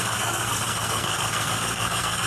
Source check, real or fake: fake